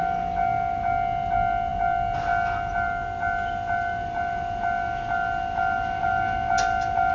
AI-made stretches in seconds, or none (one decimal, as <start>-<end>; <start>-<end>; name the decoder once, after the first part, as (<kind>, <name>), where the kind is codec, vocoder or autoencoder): none